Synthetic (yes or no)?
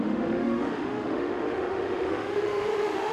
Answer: yes